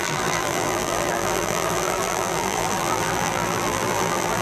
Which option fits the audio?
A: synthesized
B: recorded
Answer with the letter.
A